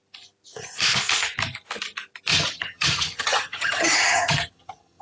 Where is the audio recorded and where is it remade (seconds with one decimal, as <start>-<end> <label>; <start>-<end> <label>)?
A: 0.0-2.3 recorded; 2.3-5.0 remade